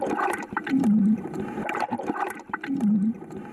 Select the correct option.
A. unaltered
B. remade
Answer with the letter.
B